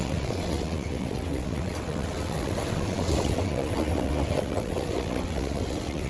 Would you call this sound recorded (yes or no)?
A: no